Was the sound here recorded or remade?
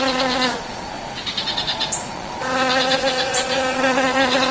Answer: remade